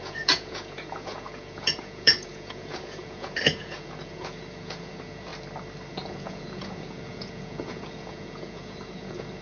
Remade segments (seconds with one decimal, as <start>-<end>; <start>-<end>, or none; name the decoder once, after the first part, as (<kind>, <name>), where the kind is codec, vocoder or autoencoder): 0.0-5.3 (vocoder, Vocos); 5.9-9.4